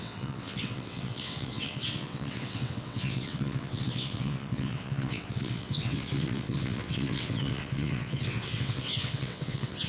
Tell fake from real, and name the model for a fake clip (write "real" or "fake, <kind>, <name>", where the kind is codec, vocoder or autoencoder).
fake, vocoder, WaveNeXt